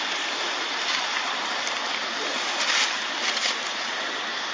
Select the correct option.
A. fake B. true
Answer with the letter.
B